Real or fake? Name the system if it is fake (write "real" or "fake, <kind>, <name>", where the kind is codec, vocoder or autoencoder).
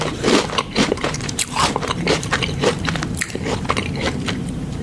fake, vocoder, BigVGAN v2